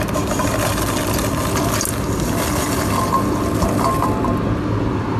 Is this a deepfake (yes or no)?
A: no